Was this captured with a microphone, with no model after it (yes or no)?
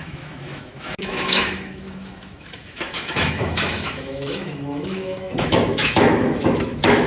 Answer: no